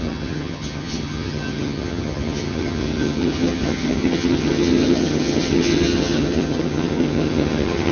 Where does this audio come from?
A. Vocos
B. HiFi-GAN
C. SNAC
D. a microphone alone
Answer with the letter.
B